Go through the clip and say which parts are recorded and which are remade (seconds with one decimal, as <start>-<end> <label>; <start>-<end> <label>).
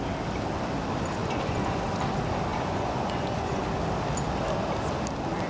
0.0-1.2 recorded; 1.2-1.8 remade; 1.8-2.5 recorded; 2.5-3.6 remade; 3.6-5.5 recorded